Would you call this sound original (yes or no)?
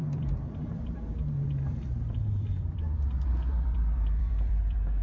no